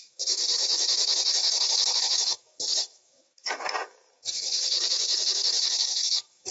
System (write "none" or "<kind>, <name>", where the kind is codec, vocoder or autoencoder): autoencoder, DAC-VAE